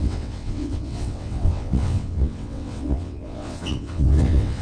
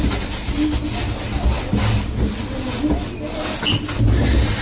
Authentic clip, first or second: second